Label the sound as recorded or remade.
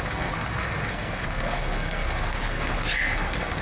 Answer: remade